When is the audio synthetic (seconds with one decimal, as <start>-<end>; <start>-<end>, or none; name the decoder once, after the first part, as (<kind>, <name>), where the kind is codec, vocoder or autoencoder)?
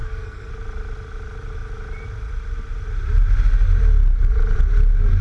0.0-0.5 (codec, SNAC)